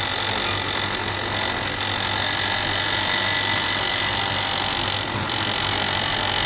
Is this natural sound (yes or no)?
yes